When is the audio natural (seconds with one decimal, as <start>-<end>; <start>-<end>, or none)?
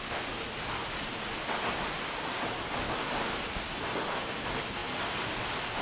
0.0-5.8